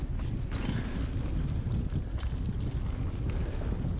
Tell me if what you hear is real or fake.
real